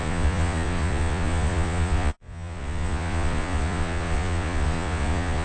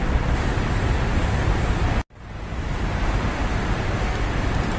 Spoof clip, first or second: first